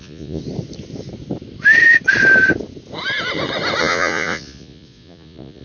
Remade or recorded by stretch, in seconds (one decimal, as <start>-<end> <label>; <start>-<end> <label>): 0.0-0.4 remade; 0.4-3.8 recorded; 3.8-5.6 remade

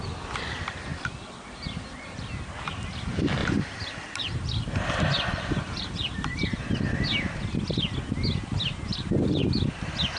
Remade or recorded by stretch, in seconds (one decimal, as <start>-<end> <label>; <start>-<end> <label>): 0.0-3.4 recorded; 3.4-6.7 remade; 6.7-8.9 recorded; 8.9-9.5 remade; 9.5-10.2 recorded